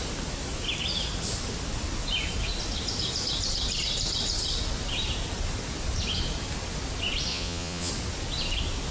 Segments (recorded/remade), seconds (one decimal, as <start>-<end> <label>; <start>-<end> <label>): 0.0-7.3 recorded; 7.3-7.9 remade; 7.9-8.9 recorded